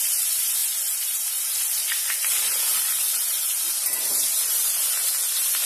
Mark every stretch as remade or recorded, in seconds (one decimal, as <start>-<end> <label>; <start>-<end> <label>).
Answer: 0.0-5.7 recorded